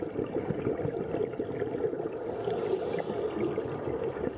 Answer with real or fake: real